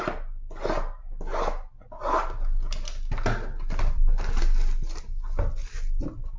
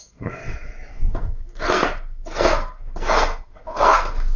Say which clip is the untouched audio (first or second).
first